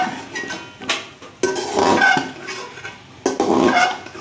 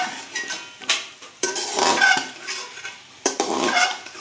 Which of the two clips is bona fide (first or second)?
first